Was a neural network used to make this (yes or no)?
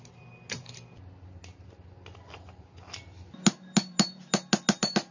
no